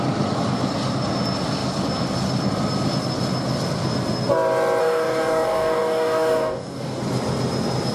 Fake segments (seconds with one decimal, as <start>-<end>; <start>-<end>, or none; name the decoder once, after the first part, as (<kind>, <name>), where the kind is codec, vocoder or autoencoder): 4.8-7.0 (codec, DAC)